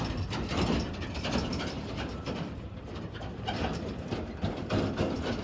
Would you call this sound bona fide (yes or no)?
no